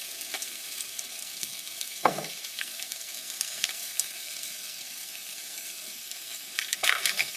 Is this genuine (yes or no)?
no